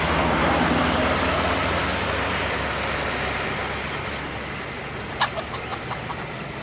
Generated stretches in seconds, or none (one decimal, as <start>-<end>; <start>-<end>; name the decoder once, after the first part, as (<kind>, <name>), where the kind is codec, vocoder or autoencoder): none

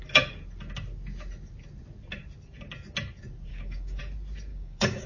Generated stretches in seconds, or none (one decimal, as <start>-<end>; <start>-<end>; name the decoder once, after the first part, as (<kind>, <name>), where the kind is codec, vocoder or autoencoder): 3.5-4.0 (codec, DAC); 4.5-5.1

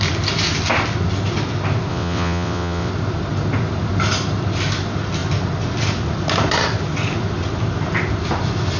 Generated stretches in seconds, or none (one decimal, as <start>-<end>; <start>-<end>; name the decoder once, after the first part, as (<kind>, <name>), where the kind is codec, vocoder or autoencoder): 1.9-2.9 (vocoder, WaveNeXt)

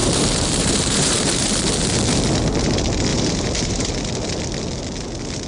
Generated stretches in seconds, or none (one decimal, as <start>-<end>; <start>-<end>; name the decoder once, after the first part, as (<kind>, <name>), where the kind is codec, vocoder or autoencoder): 0.0-1.5 (vocoder, BigVGAN v2); 3.1-3.9

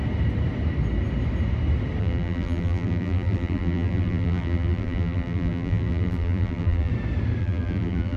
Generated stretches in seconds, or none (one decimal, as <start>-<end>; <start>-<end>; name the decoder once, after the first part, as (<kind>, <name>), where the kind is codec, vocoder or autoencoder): 2.0-6.9 (vocoder, BigVGAN v2); 7.4-8.2